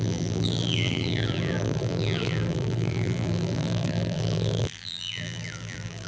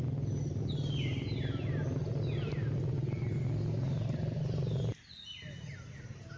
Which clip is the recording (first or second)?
second